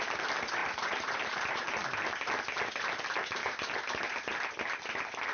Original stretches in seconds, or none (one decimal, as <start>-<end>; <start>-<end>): 0.0-0.6; 1.6-5.3